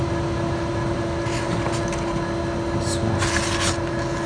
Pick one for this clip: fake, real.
real